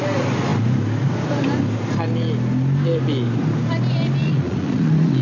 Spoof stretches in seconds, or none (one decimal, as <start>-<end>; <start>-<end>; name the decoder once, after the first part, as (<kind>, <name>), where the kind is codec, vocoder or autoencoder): 4.2-5.2 (vocoder, Vocos)